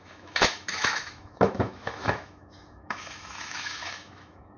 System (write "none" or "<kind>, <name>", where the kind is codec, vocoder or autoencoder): autoencoder, DAC-VAE